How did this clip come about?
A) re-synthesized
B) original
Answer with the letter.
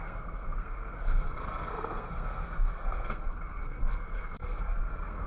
A